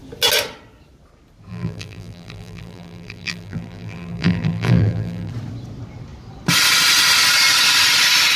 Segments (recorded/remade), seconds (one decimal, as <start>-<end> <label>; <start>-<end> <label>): 0.0-1.5 recorded; 1.5-5.3 remade; 5.3-8.4 recorded

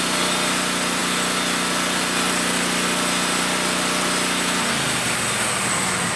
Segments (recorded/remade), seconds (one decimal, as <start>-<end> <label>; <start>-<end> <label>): 0.0-6.2 recorded

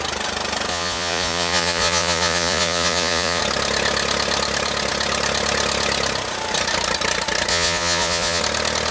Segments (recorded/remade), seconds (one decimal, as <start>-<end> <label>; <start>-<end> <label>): 0.0-0.7 recorded; 0.7-3.4 remade; 3.4-7.5 recorded; 7.5-8.4 remade; 8.4-8.9 recorded

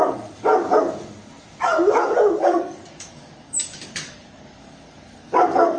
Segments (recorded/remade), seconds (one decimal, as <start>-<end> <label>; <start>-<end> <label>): 0.0-0.5 remade; 0.5-2.4 recorded; 2.4-5.8 remade